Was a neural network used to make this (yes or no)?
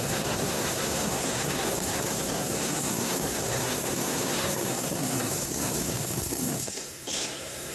yes